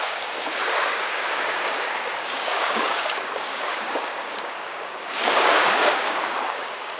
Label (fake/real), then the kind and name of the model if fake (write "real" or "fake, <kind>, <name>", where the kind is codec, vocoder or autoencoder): fake, codec, DAC